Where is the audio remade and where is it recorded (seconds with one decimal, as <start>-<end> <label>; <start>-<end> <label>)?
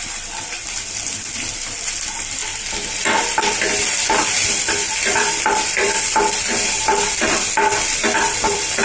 0.0-2.4 remade; 2.4-3.2 recorded; 3.2-8.8 remade